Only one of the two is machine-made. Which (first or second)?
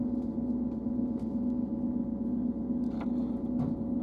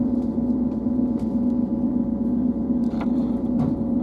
second